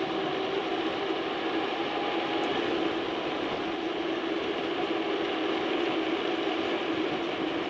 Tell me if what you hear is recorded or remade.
remade